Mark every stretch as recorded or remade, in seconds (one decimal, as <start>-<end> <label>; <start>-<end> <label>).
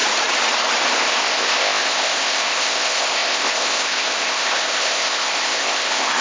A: 0.0-1.0 recorded; 1.0-6.2 remade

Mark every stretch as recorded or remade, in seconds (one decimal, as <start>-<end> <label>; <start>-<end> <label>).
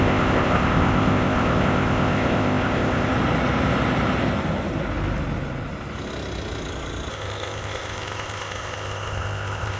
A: 0.0-3.1 remade; 3.1-7.1 recorded; 7.1-9.8 remade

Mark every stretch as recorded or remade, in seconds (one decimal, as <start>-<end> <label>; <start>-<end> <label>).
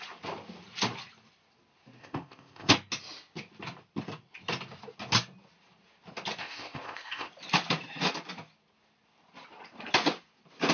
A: 0.0-2.0 recorded; 2.0-2.7 remade; 2.7-6.4 recorded; 6.4-7.3 remade; 7.3-10.7 recorded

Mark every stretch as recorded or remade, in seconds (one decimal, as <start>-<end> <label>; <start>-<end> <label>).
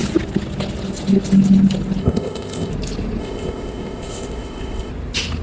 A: 0.0-2.0 recorded; 2.0-2.7 remade; 2.7-3.2 recorded; 3.2-4.9 remade; 4.9-5.4 recorded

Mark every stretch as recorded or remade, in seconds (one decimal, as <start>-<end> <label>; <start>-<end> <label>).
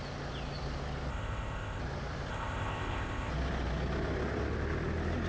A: 0.0-1.1 recorded; 1.1-1.8 remade; 1.8-2.3 recorded; 2.3-3.3 remade; 3.3-5.3 recorded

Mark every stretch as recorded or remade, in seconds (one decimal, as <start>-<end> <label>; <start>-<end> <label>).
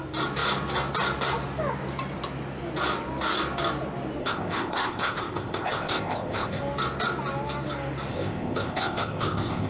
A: 0.0-4.2 recorded; 4.2-6.6 remade; 6.6-8.1 recorded; 8.1-9.7 remade